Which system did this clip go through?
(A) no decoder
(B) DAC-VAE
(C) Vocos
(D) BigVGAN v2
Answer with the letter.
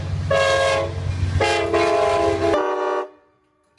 A